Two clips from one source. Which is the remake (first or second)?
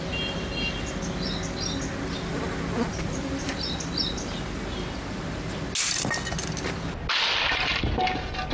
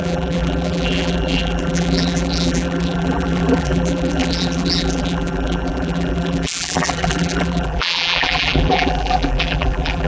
second